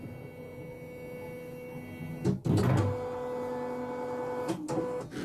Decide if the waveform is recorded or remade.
recorded